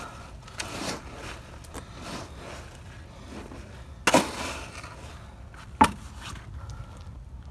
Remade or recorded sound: recorded